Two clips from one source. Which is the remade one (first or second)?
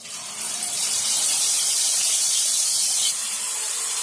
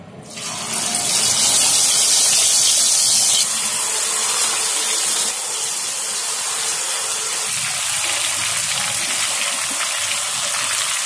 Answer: first